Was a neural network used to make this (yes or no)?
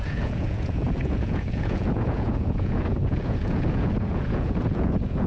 yes